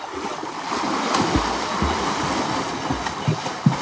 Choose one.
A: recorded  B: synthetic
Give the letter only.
A